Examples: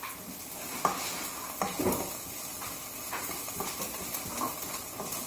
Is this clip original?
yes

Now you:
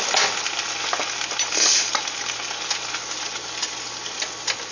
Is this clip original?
yes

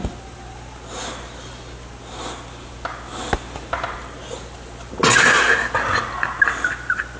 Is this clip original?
yes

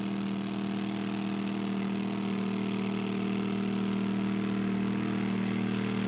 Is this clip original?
yes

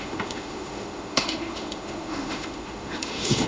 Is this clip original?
no